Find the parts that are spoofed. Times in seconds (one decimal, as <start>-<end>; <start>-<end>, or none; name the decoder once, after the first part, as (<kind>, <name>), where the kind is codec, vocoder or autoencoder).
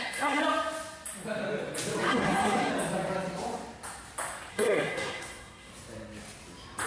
0.0-0.4 (codec, SNAC); 2.1-2.7; 4.5-5.7